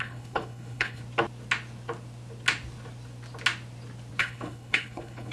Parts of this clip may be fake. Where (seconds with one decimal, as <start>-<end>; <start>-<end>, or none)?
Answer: 0.0-1.0; 4.2-5.3